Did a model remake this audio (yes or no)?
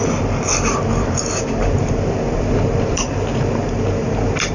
yes